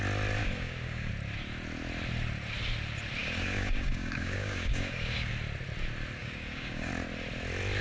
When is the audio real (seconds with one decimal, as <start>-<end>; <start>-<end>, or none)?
0.0-0.4; 1.1-3.2; 5.3-6.2; 6.9-7.8